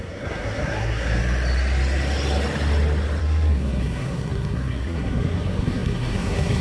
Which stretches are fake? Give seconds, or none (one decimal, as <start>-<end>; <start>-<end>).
0.0-1.2; 3.2-6.6